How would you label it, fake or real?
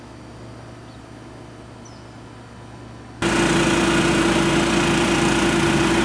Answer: real